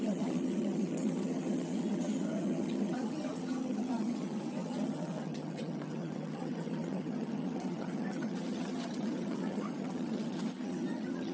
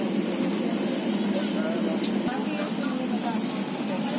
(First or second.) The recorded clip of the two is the second